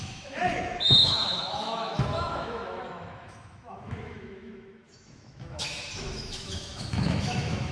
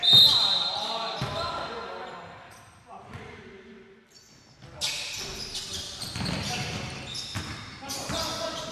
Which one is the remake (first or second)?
first